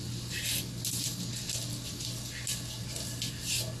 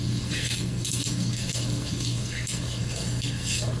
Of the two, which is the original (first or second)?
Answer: first